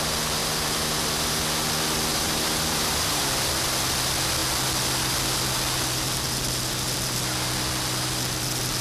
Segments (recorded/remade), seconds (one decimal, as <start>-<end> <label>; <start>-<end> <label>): 0.0-0.4 recorded; 0.4-1.4 remade; 1.4-2.1 recorded; 2.1-3.2 remade; 3.2-8.8 recorded